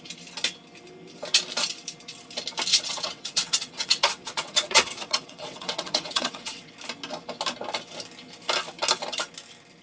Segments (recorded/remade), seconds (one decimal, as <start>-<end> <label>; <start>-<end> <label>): 0.0-2.7 recorded; 2.7-6.7 remade; 6.7-9.8 recorded